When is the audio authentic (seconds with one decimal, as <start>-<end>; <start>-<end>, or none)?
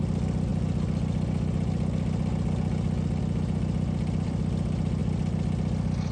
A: 0.5-3.2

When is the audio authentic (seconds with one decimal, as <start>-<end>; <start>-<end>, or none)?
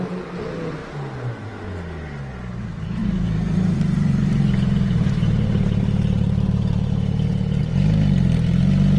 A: 0.0-0.8; 1.5-3.0; 7.6-9.0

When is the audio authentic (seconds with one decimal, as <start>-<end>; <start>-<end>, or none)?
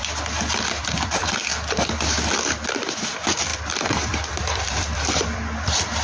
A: 0.0-0.8; 1.5-2.7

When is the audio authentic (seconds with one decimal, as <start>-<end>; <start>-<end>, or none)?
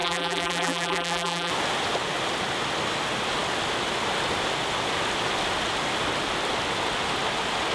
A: 1.5-7.7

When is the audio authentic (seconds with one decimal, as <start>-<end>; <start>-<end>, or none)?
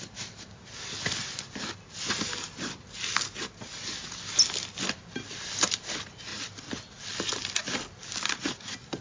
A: 0.0-9.0